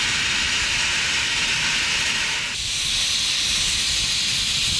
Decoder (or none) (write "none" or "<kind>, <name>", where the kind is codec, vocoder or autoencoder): none